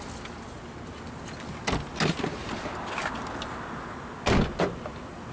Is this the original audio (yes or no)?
yes